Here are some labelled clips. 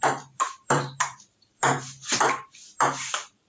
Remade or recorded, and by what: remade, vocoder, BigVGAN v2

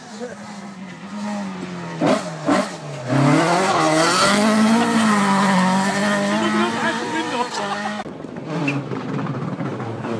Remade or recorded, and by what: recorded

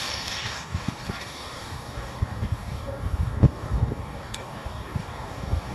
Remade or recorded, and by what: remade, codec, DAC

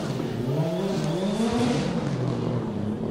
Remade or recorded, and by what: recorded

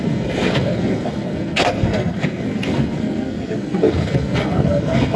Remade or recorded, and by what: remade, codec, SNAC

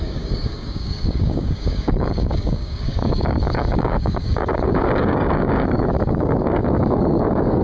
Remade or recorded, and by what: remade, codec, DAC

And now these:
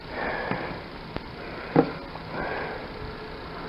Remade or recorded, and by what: recorded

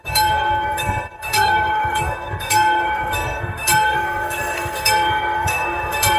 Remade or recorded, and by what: remade, codec, SNAC